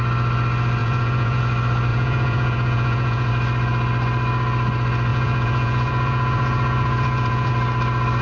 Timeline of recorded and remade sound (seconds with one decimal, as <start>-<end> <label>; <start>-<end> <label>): 0.0-0.8 recorded; 0.8-1.4 remade; 1.4-1.9 recorded; 1.9-3.3 remade; 3.3-5.1 recorded; 5.1-7.5 remade; 7.5-8.2 recorded